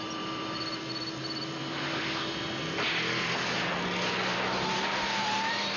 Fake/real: real